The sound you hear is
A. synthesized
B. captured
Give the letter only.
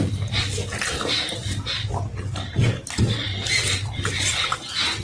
B